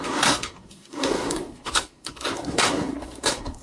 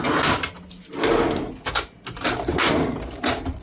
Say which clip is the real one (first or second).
second